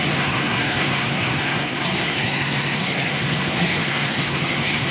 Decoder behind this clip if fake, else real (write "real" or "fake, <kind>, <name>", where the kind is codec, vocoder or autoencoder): fake, codec, SNAC